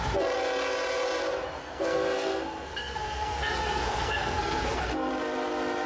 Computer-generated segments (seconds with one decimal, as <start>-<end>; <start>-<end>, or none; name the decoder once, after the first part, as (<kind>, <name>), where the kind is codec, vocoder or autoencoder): 1.6-5.1 (codec, SNAC)